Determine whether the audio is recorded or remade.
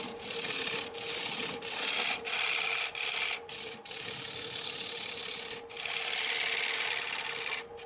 recorded